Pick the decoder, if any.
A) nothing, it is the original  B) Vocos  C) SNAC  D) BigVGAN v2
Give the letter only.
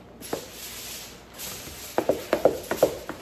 A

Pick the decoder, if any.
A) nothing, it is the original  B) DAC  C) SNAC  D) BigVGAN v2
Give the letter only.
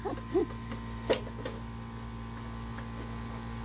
A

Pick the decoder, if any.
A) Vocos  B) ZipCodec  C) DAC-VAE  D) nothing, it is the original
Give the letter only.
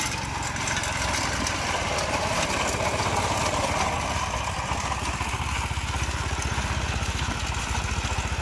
D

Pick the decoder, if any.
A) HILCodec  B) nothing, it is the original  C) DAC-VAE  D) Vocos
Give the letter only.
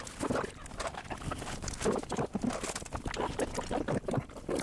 B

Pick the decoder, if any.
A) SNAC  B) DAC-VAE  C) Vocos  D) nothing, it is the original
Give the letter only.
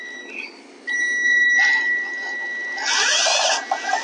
D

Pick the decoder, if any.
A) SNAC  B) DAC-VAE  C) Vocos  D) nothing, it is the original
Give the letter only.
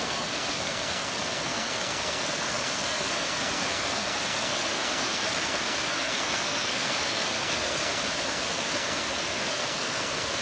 A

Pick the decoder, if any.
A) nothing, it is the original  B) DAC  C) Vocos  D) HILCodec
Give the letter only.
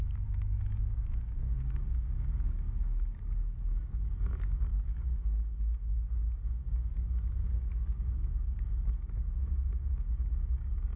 B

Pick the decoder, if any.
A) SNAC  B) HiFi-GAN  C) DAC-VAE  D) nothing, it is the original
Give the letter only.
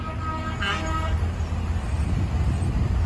D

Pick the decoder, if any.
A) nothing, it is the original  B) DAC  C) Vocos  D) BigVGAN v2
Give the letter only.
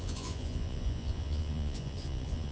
C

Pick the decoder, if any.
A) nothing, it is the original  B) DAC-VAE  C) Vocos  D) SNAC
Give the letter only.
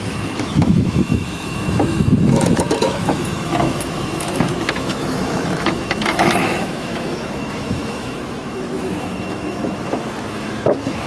B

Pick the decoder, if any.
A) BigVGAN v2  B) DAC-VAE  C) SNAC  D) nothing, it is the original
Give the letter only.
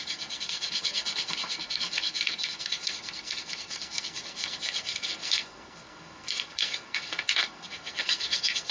C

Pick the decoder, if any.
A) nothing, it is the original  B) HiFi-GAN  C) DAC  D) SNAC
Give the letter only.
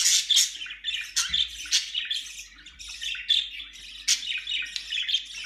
A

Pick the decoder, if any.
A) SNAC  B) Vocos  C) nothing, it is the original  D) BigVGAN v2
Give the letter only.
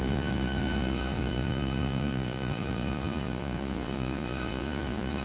B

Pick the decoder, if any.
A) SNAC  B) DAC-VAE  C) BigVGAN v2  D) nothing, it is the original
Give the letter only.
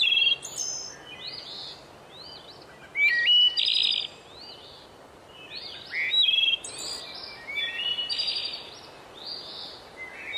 D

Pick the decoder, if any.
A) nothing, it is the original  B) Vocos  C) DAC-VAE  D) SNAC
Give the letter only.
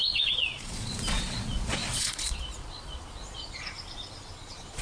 B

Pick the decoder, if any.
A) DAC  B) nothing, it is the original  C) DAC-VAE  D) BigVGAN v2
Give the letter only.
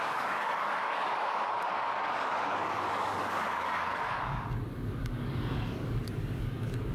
A